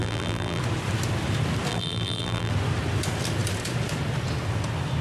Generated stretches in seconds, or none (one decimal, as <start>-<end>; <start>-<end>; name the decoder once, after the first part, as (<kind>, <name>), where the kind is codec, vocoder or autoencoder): 0.0-0.6 (vocoder, BigVGAN v2); 1.7-2.5